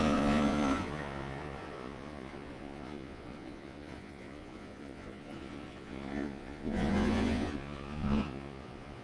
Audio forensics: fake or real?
fake